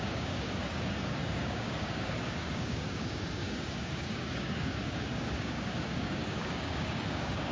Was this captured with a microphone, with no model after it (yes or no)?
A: no